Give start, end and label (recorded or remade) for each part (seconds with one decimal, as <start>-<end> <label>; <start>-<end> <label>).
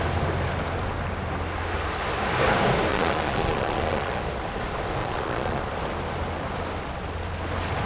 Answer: 0.0-2.9 recorded; 2.9-4.2 remade; 4.2-5.0 recorded; 5.0-5.6 remade; 5.6-7.9 recorded